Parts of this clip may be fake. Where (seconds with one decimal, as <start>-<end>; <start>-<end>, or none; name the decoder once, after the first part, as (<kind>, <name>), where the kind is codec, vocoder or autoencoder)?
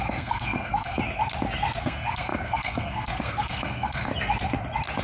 0.0-1.0 (codec, SNAC); 1.8-4.1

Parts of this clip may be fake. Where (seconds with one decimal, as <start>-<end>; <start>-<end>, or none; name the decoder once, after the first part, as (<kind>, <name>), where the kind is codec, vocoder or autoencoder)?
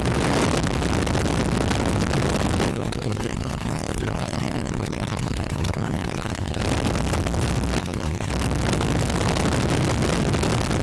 2.7-6.6 (codec, SNAC); 7.8-8.3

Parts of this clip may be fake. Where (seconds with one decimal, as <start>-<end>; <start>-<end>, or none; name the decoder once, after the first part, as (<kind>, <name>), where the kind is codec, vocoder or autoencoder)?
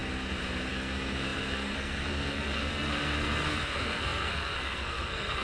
0.7-5.4 (codec, SNAC)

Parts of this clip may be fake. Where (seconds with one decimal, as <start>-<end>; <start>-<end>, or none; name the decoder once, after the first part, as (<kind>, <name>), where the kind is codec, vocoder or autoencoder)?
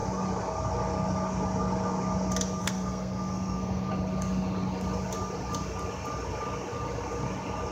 2.6-3.9 (codec, SNAC)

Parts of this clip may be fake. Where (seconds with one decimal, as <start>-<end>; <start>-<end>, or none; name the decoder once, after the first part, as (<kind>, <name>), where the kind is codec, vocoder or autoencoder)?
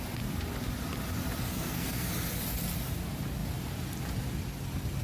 1.5-2.1 (codec, SNAC)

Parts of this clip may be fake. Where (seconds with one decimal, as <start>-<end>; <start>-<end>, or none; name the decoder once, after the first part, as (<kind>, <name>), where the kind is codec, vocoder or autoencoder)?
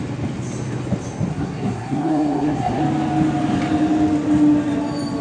1.3-2.8 (codec, SNAC)